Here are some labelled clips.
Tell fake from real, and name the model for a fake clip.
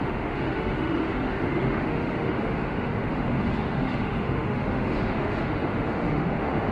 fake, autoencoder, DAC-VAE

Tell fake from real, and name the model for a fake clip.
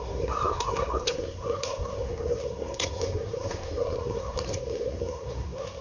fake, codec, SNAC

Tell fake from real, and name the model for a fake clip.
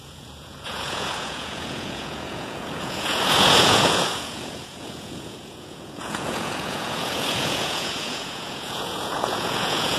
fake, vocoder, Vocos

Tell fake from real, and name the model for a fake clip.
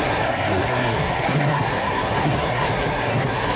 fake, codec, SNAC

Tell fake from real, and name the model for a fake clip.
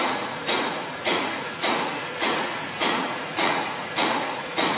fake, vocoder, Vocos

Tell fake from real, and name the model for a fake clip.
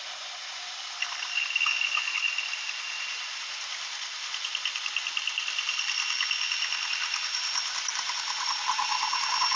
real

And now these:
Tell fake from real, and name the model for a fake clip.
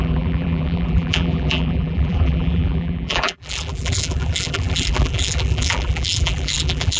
fake, vocoder, BigVGAN v2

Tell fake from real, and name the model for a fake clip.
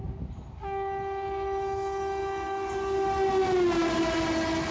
real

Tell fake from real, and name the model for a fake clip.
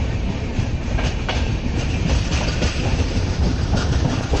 fake, vocoder, BigVGAN v2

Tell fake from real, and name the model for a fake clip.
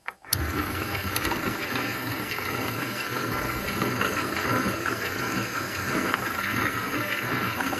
fake, codec, SNAC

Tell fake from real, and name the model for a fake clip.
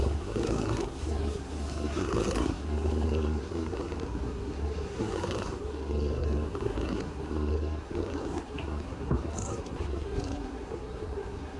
fake, codec, SNAC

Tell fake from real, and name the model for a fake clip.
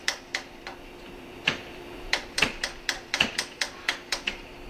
fake, vocoder, BigVGAN v2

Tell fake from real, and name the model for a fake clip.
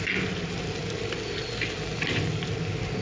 real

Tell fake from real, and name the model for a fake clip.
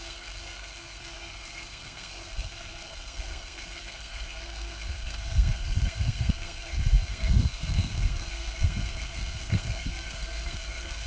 fake, codec, SNAC